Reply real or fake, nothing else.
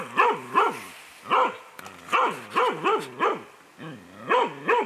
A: real